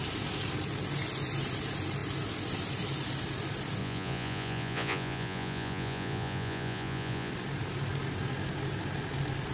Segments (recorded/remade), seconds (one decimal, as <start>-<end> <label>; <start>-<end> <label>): 0.0-3.8 recorded; 3.8-7.3 remade; 7.3-9.5 recorded